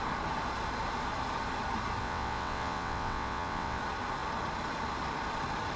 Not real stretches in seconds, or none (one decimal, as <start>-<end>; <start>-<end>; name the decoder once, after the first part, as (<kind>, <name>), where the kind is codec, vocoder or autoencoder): 2.0-3.8 (vocoder, WaveNeXt)